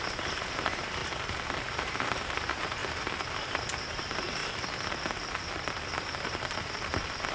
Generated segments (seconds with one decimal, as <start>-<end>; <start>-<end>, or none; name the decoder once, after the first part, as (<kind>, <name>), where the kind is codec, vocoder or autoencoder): 0.0-1.0 (vocoder, BigVGAN v2); 1.8-2.8; 3.3-4.4